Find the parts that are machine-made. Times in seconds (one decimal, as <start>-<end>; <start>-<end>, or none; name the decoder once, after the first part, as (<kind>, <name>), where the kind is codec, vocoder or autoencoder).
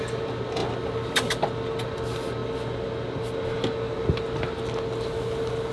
none